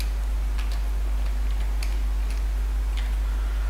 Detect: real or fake real